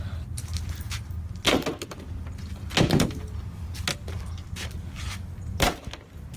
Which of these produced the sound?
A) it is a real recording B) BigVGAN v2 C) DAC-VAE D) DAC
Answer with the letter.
A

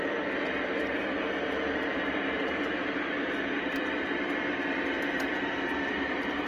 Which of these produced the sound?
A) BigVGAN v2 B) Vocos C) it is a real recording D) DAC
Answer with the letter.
A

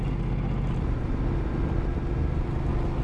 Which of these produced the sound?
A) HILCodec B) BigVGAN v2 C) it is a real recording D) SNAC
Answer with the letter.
C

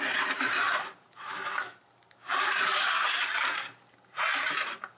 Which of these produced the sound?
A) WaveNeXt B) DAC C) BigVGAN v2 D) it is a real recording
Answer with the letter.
C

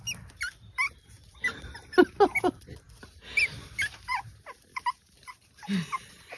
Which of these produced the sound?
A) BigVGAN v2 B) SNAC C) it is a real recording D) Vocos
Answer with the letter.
C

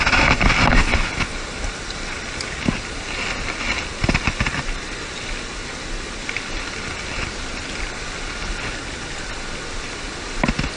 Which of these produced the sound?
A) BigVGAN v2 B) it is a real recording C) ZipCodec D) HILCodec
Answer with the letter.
B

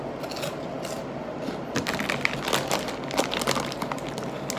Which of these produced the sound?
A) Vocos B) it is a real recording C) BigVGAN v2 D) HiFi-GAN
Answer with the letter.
B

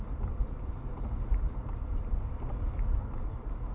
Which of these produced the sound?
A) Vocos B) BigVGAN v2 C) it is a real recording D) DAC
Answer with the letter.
B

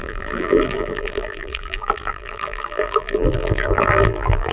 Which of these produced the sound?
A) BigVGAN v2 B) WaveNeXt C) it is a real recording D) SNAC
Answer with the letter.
A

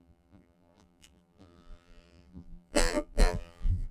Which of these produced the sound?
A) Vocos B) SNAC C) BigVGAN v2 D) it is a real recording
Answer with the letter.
C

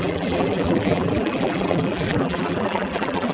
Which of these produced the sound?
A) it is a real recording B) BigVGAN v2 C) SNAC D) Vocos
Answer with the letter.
B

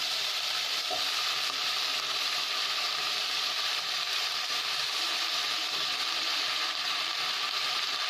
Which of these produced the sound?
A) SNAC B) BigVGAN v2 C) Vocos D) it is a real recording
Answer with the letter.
B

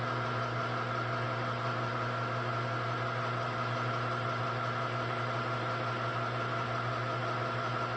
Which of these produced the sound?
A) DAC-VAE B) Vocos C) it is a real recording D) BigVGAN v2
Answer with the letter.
C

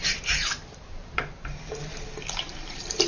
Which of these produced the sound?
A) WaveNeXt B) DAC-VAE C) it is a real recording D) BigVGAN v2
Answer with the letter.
D